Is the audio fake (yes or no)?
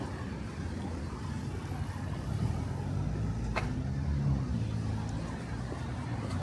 no